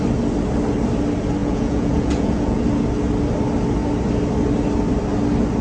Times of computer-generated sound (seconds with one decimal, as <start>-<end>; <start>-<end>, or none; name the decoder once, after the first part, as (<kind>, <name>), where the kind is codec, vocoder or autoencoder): 1.4-2.6 (vocoder, Vocos)